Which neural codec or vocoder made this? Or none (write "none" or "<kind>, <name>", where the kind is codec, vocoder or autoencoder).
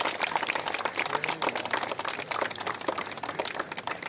none